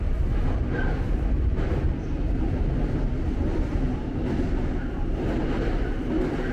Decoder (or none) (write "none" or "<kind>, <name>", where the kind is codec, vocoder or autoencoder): none